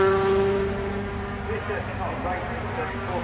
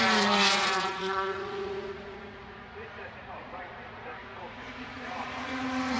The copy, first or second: second